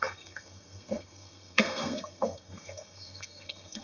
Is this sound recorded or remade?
remade